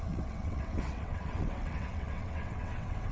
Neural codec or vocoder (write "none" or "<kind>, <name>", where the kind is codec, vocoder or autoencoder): vocoder, WaveNeXt